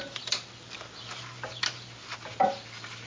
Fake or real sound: real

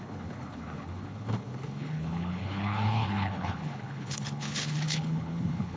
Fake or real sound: fake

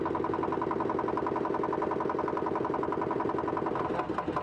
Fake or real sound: real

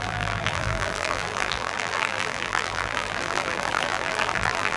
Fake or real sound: fake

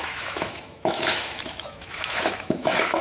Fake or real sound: fake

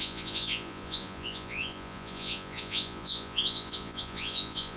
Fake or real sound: fake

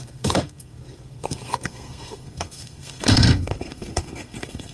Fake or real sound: fake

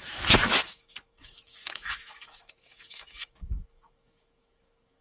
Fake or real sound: fake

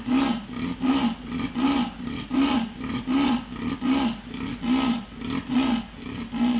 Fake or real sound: real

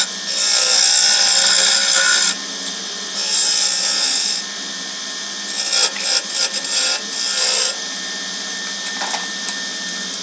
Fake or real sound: real